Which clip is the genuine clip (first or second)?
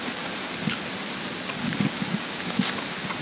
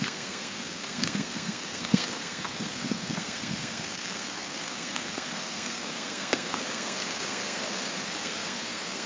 first